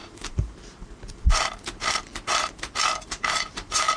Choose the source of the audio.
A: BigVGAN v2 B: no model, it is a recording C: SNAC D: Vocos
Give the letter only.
A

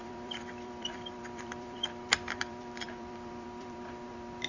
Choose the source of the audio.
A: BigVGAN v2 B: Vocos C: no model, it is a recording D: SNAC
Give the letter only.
A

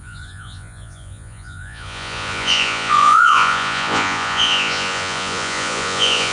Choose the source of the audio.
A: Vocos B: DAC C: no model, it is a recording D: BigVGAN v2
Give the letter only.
A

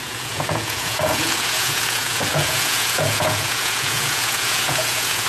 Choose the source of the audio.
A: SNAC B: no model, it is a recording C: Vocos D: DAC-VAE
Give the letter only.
C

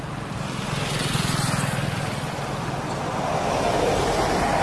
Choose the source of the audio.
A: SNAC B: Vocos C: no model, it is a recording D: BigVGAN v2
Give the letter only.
C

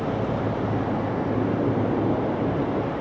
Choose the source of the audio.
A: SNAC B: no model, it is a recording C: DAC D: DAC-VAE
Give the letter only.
B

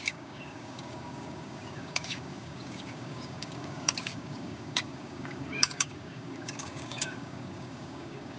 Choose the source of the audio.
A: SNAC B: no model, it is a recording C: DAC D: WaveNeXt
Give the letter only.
C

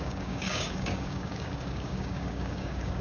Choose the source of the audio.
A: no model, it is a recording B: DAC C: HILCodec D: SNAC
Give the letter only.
B